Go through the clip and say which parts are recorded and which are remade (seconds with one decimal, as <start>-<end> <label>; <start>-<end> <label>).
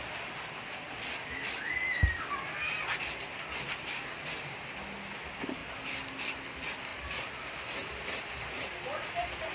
0.0-5.6 recorded; 5.6-6.1 remade; 6.1-6.9 recorded; 6.9-9.5 remade